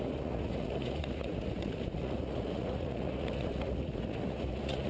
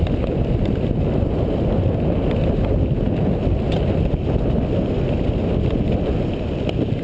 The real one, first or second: second